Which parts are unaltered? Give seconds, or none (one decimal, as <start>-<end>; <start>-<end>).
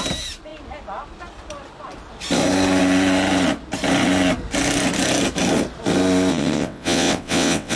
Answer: 0.0-6.3